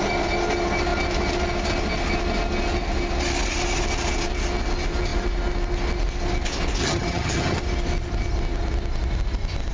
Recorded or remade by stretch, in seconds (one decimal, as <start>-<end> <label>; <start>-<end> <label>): 0.0-6.8 recorded; 6.8-7.6 remade; 7.6-9.7 recorded